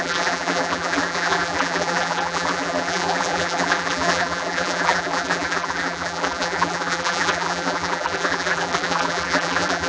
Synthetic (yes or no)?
yes